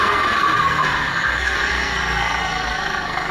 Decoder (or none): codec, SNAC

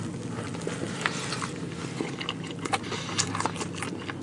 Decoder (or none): none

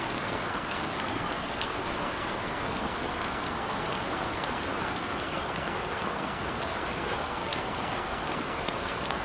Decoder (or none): codec, SNAC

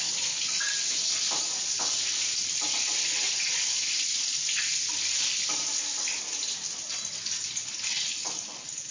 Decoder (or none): none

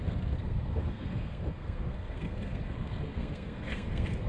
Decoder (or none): codec, SNAC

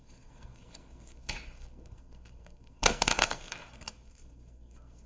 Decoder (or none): codec, SNAC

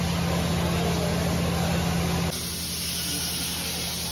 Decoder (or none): none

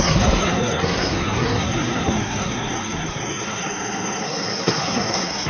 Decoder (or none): codec, SNAC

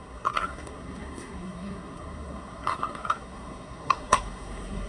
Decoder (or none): codec, SNAC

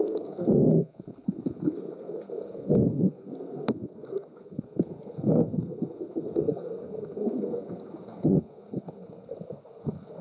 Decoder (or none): codec, SNAC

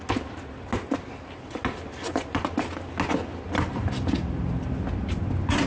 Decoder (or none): none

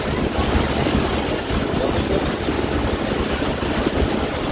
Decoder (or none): none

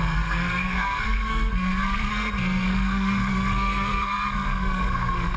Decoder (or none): codec, SNAC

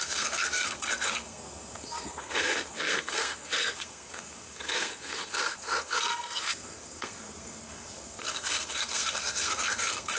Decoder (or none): codec, SNAC